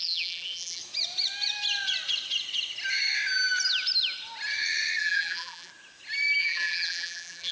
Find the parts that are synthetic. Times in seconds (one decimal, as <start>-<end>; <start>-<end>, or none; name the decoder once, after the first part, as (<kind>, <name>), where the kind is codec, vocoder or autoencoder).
0.0-0.8 (vocoder, BigVGAN v2); 5.0-5.7; 6.4-7.5